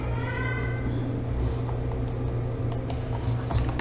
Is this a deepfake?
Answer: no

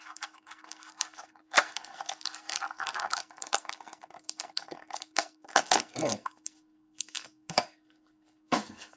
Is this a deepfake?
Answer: yes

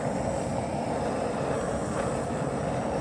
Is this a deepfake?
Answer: no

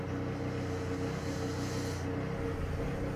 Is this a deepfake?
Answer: no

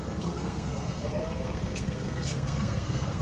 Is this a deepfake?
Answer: yes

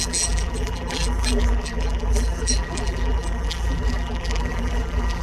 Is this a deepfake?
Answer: yes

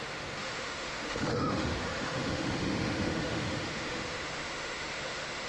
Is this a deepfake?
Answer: yes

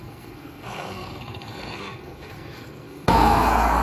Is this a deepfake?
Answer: yes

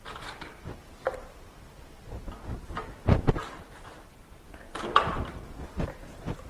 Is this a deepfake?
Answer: no